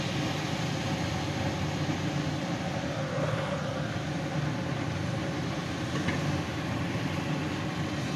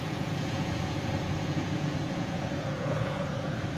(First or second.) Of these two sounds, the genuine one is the first